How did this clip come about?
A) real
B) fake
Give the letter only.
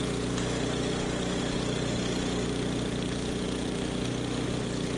A